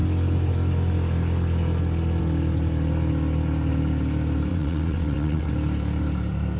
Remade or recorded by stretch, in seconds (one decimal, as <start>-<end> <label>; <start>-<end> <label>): 0.0-4.5 recorded; 4.5-5.5 remade; 5.5-6.6 recorded